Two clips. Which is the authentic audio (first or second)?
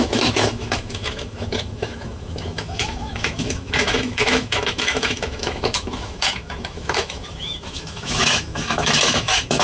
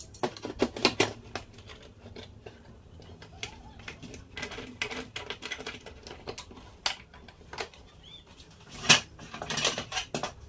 second